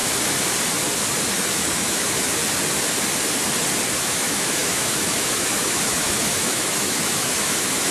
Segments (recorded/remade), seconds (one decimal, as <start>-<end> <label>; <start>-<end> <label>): 0.0-1.5 recorded; 1.5-2.4 remade; 2.4-4.0 recorded; 4.0-7.9 remade